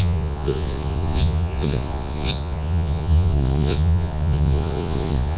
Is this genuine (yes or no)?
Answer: no